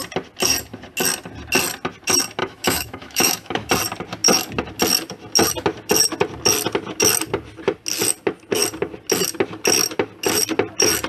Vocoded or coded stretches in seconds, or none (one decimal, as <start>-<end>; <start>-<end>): 2.4-3.7